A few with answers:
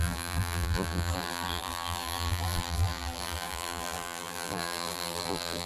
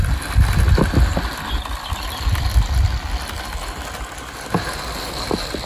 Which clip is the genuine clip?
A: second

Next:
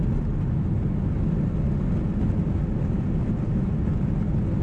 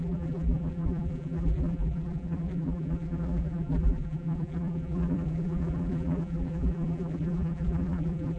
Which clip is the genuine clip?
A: first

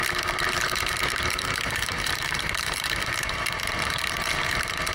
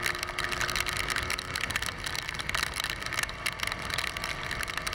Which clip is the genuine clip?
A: second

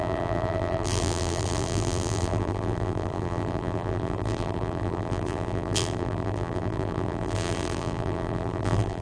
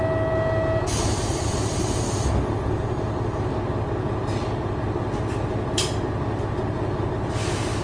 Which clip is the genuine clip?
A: second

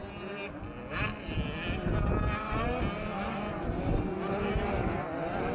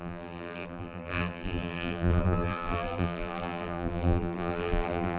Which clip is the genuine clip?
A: first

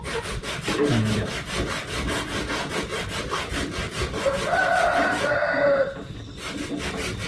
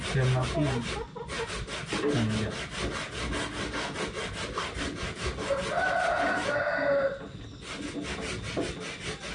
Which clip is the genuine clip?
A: second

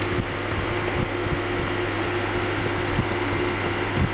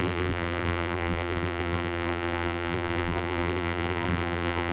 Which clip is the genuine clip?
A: first